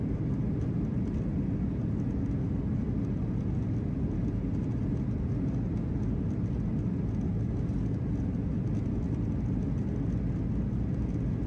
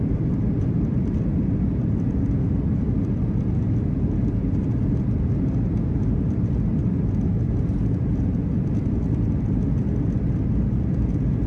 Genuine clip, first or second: first